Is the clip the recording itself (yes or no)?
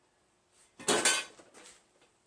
yes